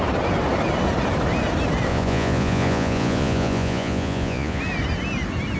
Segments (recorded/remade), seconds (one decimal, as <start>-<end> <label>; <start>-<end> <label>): 0.0-1.9 recorded; 1.9-4.6 remade; 4.6-5.6 recorded